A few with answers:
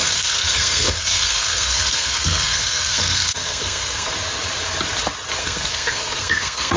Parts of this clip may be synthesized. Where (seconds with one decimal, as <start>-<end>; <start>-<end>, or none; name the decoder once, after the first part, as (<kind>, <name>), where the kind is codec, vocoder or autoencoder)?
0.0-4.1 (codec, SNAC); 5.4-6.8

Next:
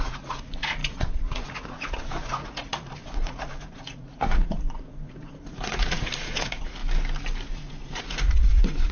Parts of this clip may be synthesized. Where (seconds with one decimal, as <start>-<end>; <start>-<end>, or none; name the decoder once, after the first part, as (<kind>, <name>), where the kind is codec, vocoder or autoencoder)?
0.0-6.8 (vocoder, Vocos); 7.5-8.9

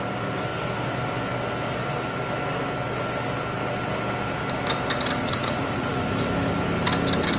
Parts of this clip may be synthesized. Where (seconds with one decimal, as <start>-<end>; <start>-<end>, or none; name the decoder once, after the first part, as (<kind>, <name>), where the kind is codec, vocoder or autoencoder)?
5.2-6.0 (vocoder, Vocos)